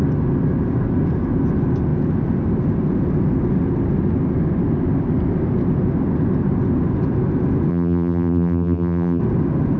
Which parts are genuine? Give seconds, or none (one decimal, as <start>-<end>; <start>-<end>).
0.0-7.7; 9.2-9.8